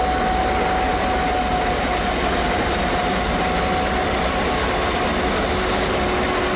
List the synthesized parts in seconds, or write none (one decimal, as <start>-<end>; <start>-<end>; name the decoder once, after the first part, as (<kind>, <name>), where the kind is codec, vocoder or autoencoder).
none